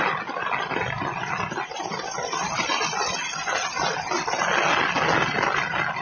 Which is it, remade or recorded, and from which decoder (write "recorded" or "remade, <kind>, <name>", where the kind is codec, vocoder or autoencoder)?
recorded